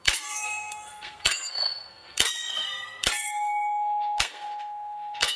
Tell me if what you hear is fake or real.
fake